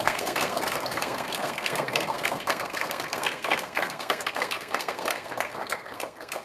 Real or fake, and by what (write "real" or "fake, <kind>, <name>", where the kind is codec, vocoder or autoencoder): fake, codec, SNAC